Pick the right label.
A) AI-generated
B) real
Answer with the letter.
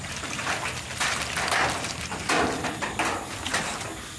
B